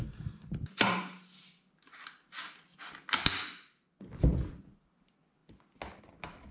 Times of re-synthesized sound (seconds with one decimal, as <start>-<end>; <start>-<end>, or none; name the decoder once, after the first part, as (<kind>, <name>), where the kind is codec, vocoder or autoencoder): none